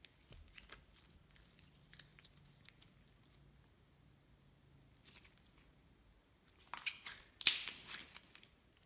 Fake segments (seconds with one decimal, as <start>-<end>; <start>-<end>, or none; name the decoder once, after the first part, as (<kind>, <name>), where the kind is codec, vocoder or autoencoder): none